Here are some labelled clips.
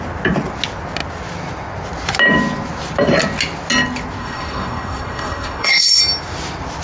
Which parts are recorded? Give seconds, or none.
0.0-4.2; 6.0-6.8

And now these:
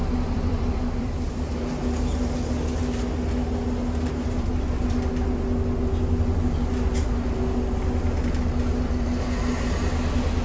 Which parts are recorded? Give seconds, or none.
1.5-10.4

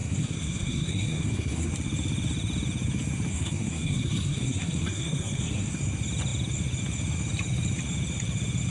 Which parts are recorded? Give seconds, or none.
1.7-3.3; 5.7-8.7

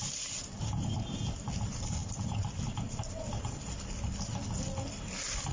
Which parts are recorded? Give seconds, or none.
0.0-5.5

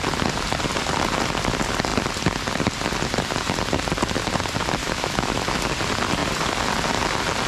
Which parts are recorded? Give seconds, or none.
0.0-4.8; 5.6-7.5